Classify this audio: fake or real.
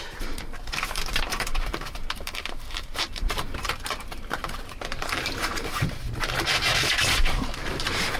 fake